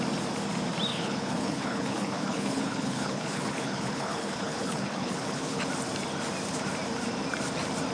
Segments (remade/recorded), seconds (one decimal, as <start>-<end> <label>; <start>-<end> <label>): 0.0-0.9 recorded; 0.9-5.6 remade; 5.6-7.9 recorded